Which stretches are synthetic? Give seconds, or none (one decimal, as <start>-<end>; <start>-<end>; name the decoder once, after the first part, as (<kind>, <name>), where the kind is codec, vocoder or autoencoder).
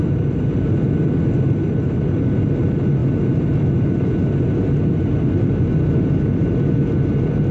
none